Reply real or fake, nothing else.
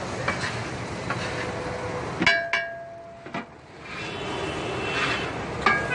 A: real